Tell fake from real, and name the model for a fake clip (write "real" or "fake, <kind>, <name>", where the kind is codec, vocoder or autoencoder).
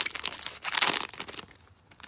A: real